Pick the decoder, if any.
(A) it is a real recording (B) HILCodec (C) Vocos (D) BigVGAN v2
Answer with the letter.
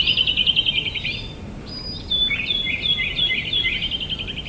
A